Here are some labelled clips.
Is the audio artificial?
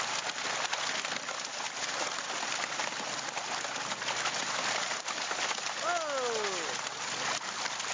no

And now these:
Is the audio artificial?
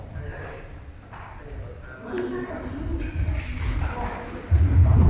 no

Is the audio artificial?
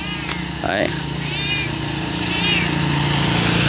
no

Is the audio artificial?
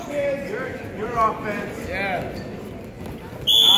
no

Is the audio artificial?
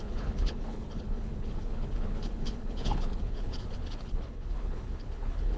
yes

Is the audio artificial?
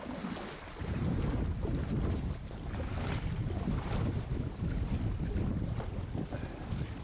no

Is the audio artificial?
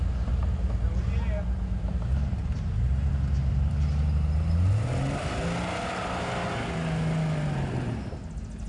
no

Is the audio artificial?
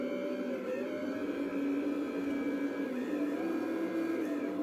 no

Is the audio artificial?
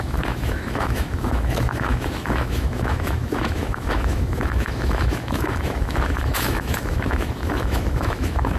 yes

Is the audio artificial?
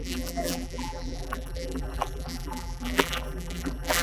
yes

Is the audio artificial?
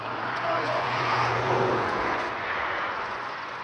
yes